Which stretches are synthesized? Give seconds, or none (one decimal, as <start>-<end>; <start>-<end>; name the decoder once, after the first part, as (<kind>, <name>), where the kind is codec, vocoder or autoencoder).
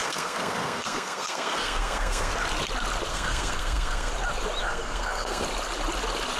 0.0-2.3 (codec, SNAC); 3.1-4.1; 4.6-5.4